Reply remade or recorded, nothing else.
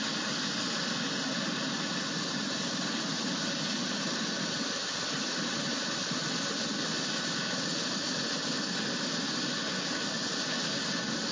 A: recorded